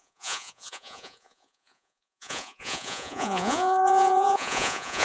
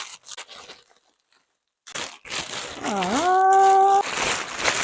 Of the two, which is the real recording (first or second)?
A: second